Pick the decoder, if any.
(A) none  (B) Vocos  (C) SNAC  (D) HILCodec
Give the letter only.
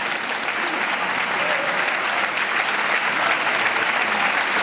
A